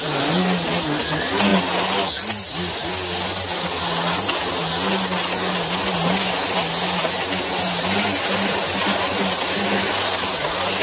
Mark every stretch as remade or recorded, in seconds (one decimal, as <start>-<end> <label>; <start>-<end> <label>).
0.0-10.8 recorded